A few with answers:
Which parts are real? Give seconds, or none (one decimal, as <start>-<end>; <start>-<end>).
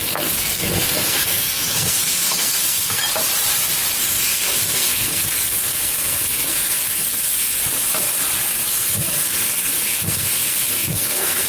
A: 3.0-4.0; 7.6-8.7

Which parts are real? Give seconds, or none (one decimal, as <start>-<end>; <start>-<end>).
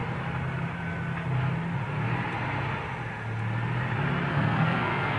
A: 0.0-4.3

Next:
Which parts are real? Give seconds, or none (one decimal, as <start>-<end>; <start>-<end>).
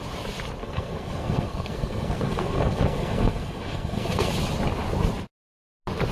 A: 0.0-0.6; 4.3-6.1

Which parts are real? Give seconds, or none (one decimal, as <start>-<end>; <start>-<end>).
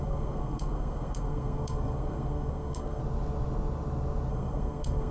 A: 3.0-4.3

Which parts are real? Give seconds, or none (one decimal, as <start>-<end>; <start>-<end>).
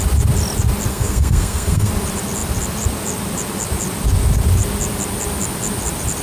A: 0.0-0.9; 1.9-6.2